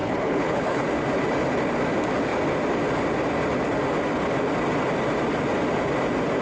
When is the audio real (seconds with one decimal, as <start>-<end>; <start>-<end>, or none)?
0.9-6.4